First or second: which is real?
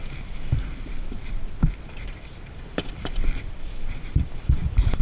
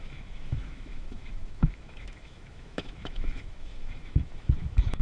first